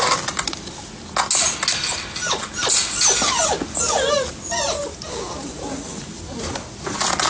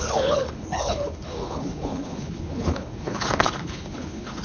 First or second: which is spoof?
second